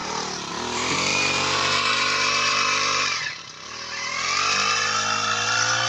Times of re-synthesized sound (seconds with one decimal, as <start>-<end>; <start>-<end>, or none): 0.0-0.5; 1.1-3.4